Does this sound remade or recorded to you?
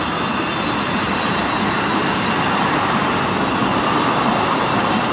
recorded